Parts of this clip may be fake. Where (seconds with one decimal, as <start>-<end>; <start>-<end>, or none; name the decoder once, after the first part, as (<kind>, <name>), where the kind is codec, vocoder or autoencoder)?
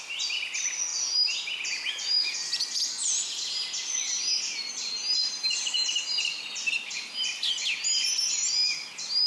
5.3-5.9 (vocoder, BigVGAN v2)